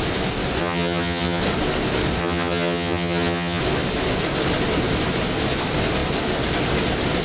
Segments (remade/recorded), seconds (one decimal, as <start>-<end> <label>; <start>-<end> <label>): 0.0-0.6 recorded; 0.6-1.4 remade; 1.4-2.2 recorded; 2.2-3.6 remade; 3.6-7.2 recorded